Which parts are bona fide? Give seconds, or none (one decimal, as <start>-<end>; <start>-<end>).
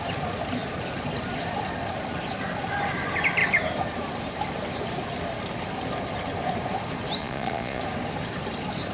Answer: 0.0-7.2; 7.8-8.9